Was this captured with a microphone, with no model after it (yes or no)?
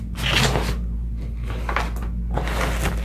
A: yes